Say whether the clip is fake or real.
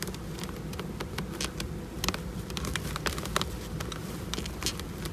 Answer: real